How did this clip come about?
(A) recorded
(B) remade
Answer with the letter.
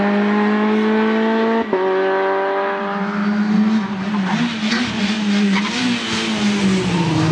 A